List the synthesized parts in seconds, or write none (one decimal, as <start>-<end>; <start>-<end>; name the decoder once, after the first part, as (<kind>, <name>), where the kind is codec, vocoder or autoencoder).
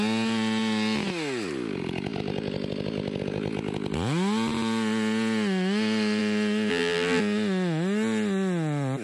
6.7-7.2 (vocoder, BigVGAN v2)